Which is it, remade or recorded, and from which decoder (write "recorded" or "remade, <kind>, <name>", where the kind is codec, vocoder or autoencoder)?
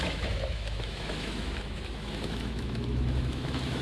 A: remade, autoencoder, DAC-VAE